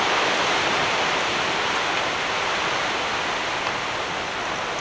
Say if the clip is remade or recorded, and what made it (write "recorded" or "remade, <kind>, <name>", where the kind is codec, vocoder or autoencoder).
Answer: recorded